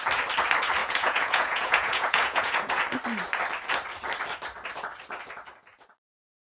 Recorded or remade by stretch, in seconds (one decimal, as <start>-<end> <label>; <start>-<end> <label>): 0.0-0.8 recorded; 0.8-2.8 remade; 2.8-6.4 recorded